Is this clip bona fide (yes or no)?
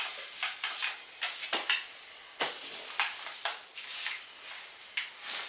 yes